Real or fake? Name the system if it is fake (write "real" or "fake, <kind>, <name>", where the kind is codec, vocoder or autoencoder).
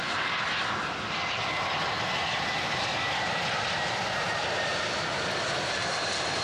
fake, vocoder, BigVGAN v2